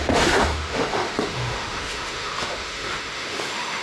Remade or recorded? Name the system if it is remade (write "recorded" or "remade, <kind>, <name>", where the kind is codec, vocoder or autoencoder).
remade, autoencoder, DAC-VAE